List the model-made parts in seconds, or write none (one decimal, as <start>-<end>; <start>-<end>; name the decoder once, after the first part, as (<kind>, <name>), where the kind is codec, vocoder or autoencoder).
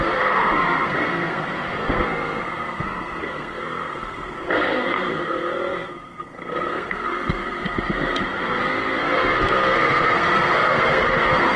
0.0-11.6 (codec, SNAC)